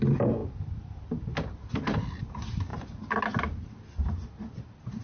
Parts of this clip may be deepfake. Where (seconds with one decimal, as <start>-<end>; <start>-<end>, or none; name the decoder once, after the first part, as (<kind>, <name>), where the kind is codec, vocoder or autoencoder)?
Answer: none